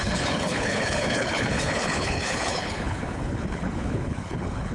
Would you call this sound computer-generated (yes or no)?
yes